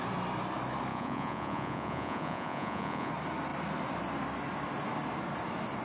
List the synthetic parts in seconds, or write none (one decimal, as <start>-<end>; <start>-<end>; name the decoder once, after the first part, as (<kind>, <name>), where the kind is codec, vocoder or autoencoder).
0.9-3.1 (vocoder, Vocos)